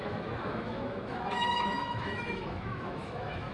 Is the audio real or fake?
fake